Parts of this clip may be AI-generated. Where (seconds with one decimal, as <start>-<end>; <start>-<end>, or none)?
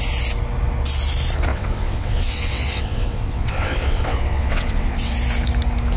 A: 1.5-5.1